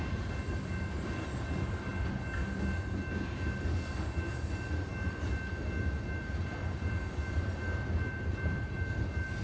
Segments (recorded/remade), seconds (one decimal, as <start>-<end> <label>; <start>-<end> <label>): 0.0-9.4 recorded